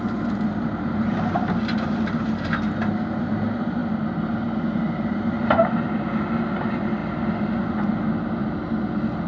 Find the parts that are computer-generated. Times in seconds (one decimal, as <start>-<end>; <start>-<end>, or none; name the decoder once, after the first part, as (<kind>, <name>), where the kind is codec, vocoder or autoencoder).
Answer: 7.0-7.6 (vocoder, BigVGAN v2); 8.4-9.3